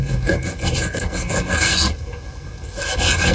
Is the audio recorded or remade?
remade